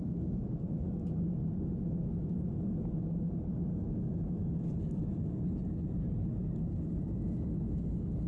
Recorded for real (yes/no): yes